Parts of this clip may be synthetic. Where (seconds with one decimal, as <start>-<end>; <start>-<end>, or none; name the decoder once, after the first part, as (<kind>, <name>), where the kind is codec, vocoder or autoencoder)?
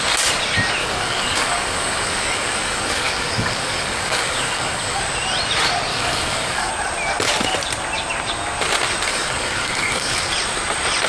0.8-5.0 (codec, DAC); 5.9-6.7; 9.1-10.3